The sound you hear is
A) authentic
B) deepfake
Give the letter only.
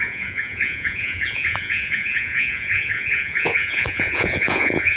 B